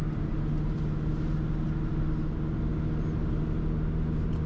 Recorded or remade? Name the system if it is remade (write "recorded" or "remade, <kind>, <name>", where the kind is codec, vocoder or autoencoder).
recorded